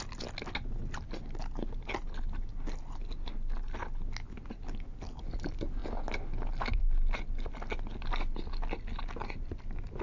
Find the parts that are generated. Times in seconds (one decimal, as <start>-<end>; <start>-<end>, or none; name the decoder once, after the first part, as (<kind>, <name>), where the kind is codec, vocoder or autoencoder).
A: none